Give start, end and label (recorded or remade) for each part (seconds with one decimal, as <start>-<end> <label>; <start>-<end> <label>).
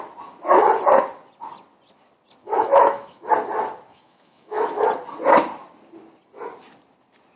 0.0-2.4 recorded; 2.4-3.3 remade; 3.3-3.9 recorded; 3.9-4.8 remade; 4.8-7.4 recorded